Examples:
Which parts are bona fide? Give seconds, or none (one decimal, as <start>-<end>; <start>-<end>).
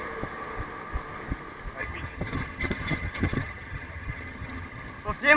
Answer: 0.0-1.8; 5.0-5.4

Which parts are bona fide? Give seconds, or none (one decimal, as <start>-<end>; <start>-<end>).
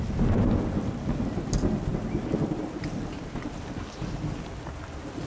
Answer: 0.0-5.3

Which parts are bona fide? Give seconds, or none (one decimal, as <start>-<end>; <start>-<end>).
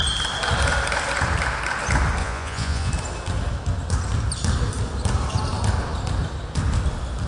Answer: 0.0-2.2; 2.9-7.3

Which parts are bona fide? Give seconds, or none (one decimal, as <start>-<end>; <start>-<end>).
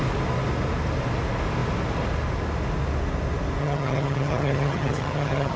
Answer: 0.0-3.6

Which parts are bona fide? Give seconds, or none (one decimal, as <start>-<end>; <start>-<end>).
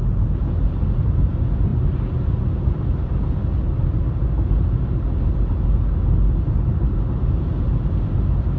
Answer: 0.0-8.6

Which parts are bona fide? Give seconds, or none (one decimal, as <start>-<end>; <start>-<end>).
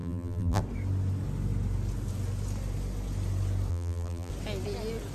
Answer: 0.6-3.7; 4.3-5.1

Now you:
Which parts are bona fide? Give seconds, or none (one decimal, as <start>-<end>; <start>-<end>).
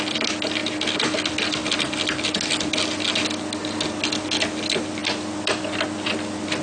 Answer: 0.0-6.6